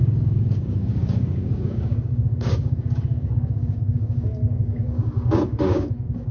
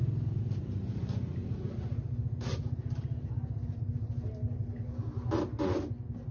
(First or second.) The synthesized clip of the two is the first